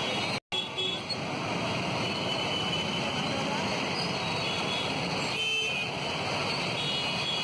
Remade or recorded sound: recorded